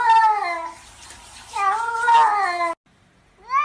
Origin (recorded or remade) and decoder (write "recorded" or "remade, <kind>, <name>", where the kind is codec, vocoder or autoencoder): recorded